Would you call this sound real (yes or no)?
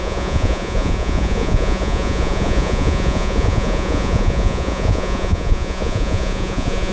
no